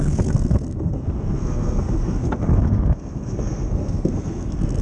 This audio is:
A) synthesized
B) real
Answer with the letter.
A